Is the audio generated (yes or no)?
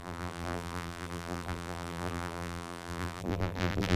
yes